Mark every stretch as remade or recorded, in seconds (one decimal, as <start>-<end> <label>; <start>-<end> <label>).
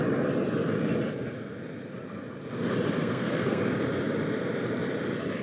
0.0-3.0 recorded; 3.0-3.6 remade; 3.6-5.4 recorded